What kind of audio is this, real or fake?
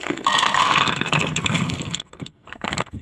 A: fake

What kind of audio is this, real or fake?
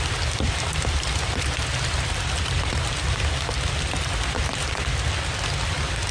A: real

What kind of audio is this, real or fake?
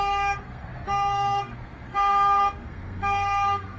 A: fake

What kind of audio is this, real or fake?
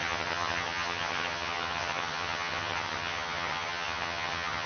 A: fake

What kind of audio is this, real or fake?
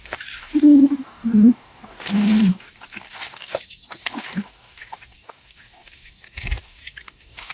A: fake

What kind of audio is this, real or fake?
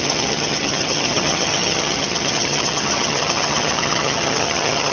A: fake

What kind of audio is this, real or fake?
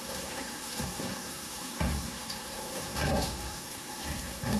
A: fake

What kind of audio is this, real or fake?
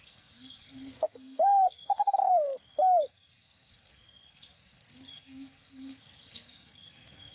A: fake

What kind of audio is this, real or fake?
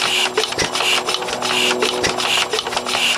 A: real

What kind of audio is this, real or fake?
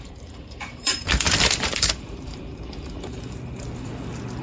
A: fake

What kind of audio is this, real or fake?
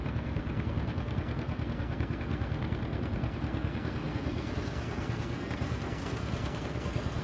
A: fake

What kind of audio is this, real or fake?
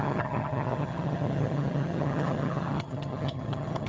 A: fake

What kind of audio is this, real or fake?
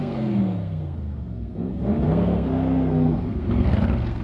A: fake